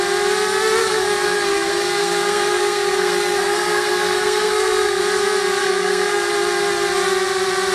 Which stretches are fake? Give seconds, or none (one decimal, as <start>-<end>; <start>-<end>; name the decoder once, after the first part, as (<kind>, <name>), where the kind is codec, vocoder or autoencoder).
0.8-5.0 (codec, SNAC); 5.6-6.3